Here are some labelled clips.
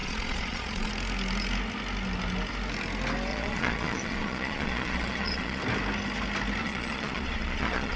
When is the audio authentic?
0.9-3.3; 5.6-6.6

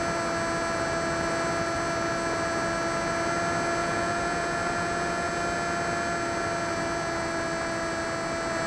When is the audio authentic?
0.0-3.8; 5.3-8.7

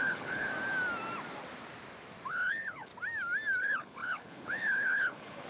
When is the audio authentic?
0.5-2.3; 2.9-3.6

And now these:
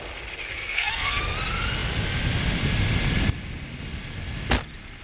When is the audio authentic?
0.0-0.5; 1.2-5.0

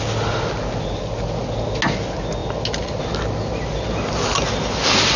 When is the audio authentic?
0.0-5.2

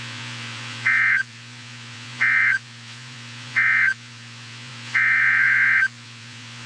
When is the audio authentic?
none